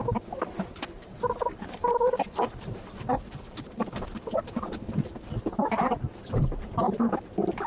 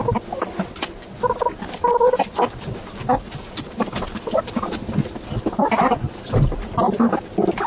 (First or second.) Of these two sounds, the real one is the second